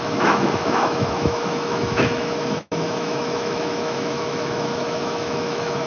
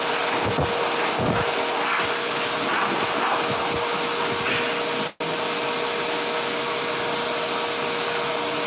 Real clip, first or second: second